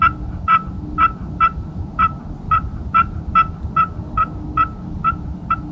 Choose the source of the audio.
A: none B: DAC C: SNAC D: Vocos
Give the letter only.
A